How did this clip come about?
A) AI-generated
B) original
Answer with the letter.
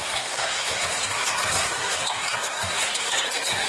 A